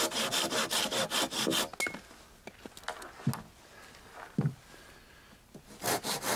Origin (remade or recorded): recorded